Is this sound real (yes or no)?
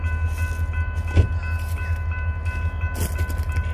yes